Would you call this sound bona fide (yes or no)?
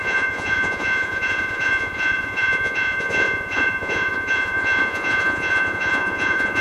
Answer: no